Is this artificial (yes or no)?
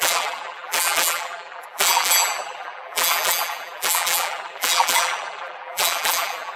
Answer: yes